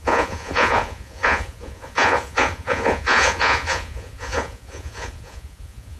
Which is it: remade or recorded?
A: remade